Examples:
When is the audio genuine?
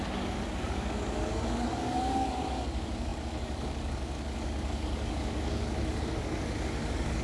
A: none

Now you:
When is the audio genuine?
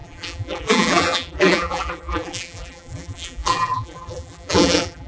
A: none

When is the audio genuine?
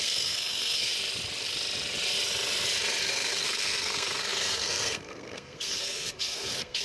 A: 0.9-3.1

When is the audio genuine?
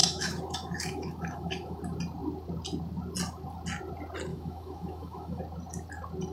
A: 1.8-4.3; 5.4-6.3